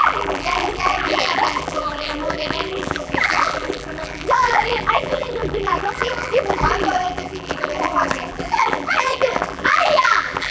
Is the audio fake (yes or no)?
yes